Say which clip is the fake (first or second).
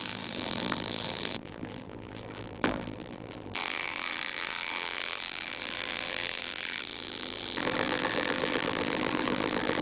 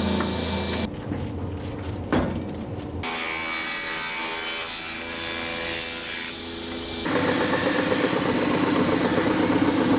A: first